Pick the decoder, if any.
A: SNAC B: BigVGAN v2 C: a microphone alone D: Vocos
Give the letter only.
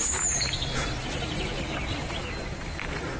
B